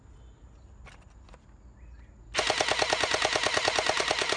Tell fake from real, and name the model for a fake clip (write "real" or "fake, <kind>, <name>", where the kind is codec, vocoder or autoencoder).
real